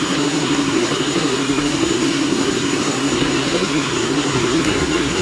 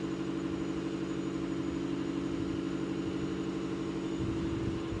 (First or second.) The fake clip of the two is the first